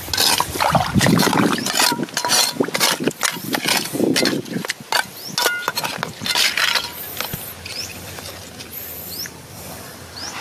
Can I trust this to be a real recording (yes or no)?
yes